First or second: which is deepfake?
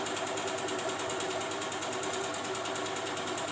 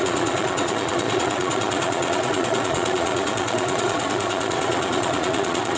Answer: second